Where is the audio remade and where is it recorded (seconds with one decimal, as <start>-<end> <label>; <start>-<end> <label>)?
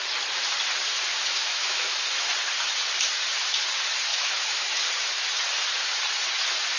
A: 0.0-1.1 recorded; 1.1-2.3 remade; 2.3-4.1 recorded; 4.1-4.9 remade; 4.9-6.8 recorded